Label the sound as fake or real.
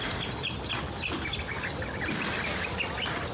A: real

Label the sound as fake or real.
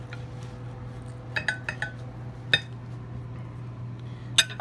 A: real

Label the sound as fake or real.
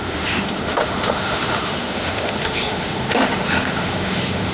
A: fake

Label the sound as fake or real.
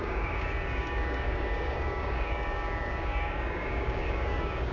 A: fake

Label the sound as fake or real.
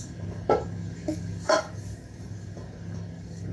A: fake